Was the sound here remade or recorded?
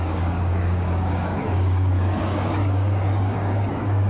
remade